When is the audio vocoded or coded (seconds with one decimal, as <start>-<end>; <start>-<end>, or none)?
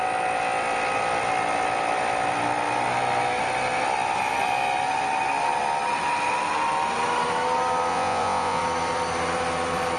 7.9-8.6